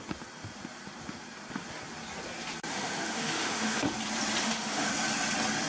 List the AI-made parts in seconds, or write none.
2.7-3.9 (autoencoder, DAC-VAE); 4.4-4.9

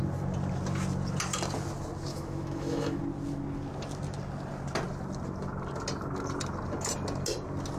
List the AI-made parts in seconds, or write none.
2.1-3.0 (autoencoder, DAC-VAE)

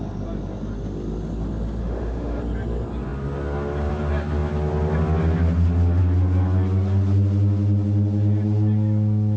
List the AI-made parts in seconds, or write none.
1.8-2.4 (autoencoder, DAC-VAE)

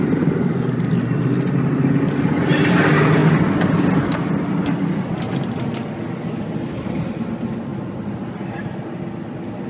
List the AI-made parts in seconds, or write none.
none

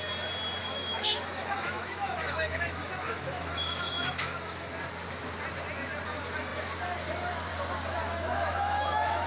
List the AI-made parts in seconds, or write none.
0.6-4.7 (autoencoder, DAC-VAE); 8.0-9.3

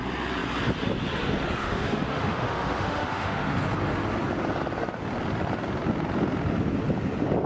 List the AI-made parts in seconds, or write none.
1.6-3.6 (autoencoder, DAC-VAE)

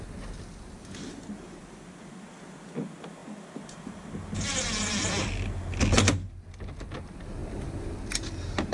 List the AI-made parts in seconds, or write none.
none